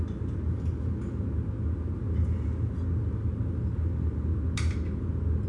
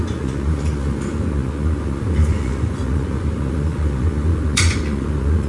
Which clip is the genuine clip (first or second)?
first